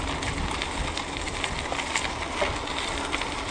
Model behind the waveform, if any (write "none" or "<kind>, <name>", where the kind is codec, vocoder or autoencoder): none